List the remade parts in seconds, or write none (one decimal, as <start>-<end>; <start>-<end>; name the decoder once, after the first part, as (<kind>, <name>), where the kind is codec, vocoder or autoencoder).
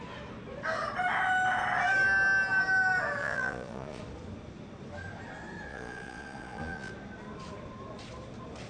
3.2-4.0 (vocoder, Vocos); 5.7-6.9